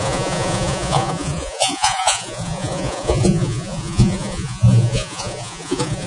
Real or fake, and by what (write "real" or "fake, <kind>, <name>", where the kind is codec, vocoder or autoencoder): fake, vocoder, Vocos